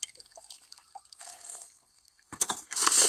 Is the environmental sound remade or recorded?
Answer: remade